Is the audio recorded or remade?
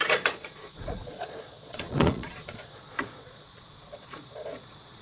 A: remade